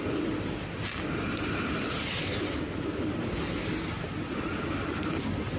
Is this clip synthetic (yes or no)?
no